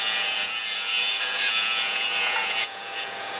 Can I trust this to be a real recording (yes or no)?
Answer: no